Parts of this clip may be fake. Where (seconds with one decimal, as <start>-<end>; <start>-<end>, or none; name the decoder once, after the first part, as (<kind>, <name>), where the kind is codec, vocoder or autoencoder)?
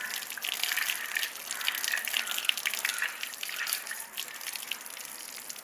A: 2.9-3.9 (vocoder, BigVGAN v2)